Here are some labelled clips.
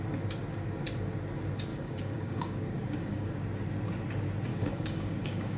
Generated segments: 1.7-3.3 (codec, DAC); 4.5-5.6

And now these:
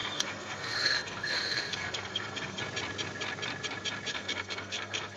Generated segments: 0.0-2.6 (codec, SNAC); 4.1-5.2